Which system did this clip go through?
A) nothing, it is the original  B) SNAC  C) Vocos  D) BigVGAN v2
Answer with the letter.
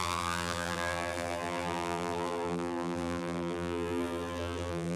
D